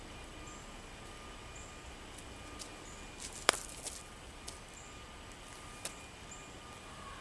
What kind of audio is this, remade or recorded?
recorded